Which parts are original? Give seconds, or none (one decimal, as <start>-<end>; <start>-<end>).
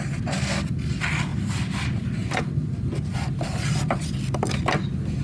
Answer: 0.0-5.2